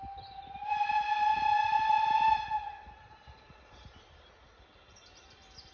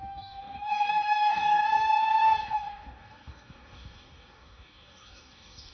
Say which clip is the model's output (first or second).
second